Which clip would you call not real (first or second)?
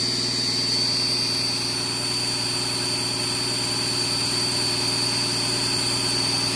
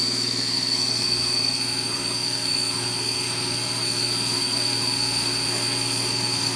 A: second